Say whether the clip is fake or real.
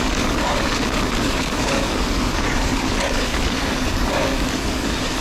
fake